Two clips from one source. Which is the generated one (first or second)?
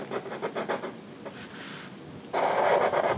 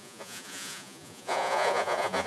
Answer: second